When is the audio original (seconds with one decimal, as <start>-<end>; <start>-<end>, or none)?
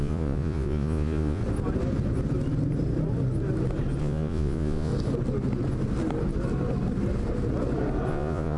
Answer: 1.4-4.0; 4.9-8.1